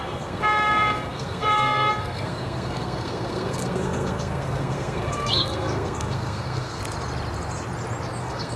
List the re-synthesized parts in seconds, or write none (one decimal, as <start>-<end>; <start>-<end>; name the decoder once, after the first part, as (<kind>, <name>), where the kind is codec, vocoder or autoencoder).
0.0-6.8 (codec, SNAC); 8.2-8.6